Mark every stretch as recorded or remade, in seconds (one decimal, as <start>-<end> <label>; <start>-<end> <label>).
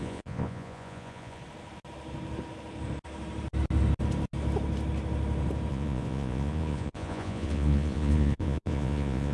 0.0-1.4 remade; 1.4-5.7 recorded; 5.7-9.3 remade